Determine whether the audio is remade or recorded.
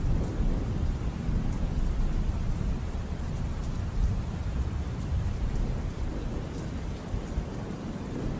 recorded